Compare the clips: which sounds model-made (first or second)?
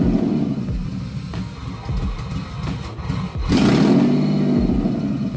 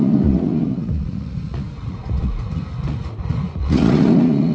second